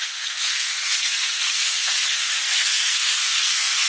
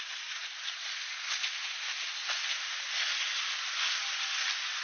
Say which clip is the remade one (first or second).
first